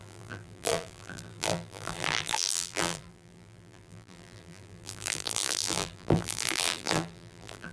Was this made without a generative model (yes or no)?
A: no